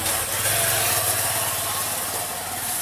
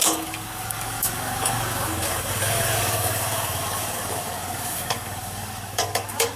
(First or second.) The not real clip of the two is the second